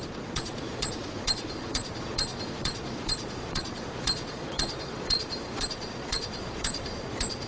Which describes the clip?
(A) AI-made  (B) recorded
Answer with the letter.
A